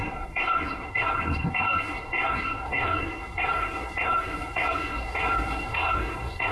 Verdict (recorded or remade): remade